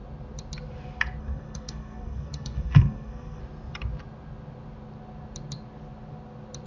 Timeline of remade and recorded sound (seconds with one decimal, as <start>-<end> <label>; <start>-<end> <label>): 0.0-1.2 recorded; 1.2-3.4 remade; 3.4-6.7 recorded